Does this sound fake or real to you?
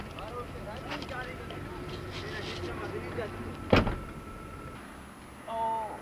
real